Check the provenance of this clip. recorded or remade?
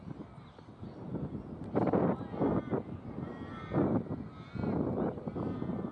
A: recorded